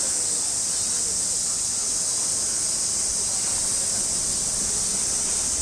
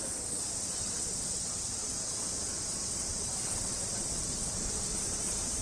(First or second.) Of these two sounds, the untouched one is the first